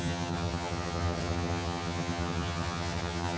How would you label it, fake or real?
fake